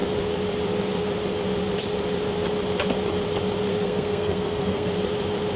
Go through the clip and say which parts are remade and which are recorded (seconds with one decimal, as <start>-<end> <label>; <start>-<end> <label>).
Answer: 0.0-3.7 recorded; 3.7-4.9 remade; 4.9-5.6 recorded